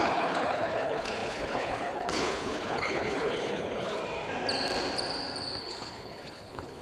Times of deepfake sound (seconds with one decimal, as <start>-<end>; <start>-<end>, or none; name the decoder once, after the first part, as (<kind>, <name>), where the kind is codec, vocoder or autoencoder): 0.0-4.0 (codec, HILCodec); 5.6-6.8